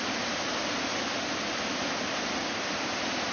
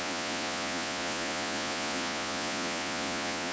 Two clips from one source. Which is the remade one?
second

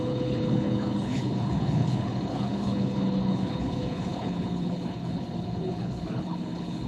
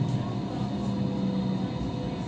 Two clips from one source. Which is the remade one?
first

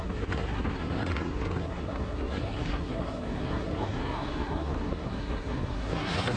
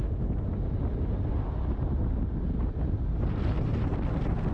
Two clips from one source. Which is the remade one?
first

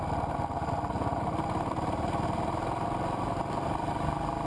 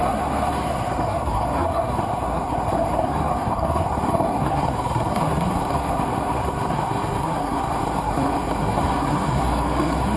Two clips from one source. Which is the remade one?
second